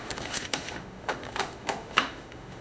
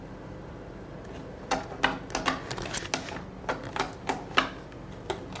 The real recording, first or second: second